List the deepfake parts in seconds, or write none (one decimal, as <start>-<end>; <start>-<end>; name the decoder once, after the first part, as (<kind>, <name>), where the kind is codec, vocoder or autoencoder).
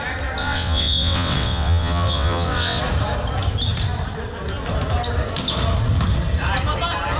0.4-2.8 (vocoder, WaveNeXt)